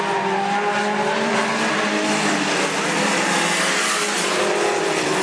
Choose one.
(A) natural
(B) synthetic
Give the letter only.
B